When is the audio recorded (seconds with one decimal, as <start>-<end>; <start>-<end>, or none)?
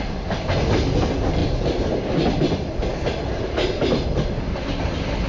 0.0-5.3